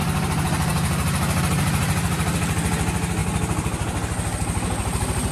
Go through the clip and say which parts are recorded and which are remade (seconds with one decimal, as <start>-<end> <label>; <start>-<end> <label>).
0.0-5.3 recorded